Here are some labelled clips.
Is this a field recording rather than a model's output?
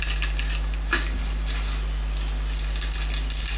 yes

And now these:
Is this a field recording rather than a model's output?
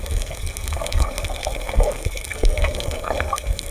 no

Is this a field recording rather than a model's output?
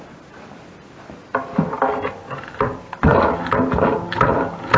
yes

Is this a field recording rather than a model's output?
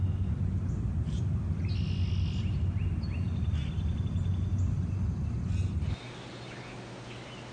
yes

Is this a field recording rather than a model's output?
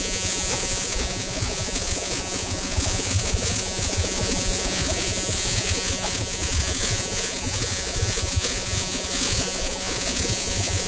no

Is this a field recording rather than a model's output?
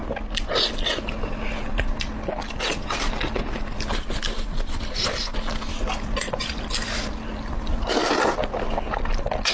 yes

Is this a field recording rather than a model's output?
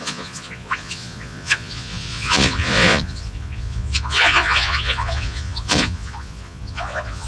no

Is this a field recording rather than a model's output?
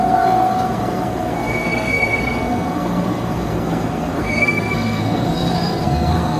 no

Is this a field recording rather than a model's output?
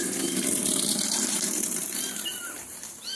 no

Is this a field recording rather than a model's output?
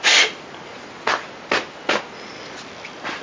yes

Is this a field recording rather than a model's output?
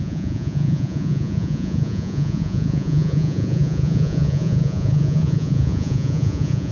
no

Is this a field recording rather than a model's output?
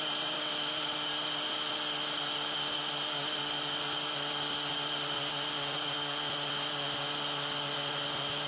yes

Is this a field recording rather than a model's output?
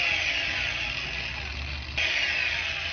yes